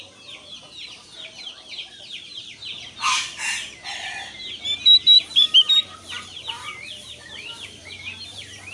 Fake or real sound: fake